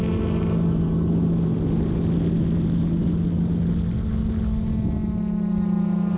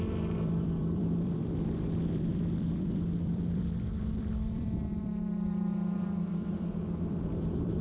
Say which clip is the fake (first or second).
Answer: second